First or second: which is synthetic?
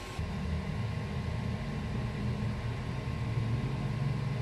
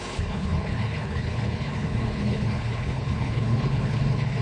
second